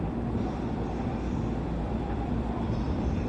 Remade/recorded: remade